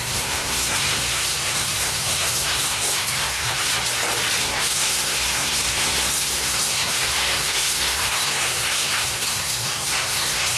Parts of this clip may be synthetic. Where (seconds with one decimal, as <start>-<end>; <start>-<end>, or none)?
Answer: 0.0-3.7; 4.4-10.6